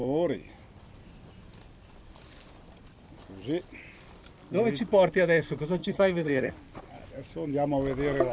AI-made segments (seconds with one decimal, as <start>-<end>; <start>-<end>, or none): 5.8-6.5